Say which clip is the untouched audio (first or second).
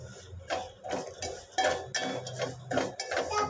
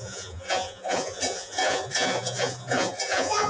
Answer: first